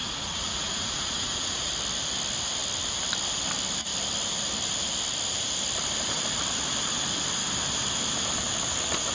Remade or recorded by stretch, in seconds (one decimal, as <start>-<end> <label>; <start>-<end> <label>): 0.0-1.7 remade; 1.7-9.1 recorded